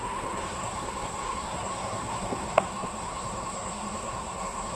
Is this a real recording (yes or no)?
no